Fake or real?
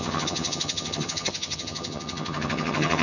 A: fake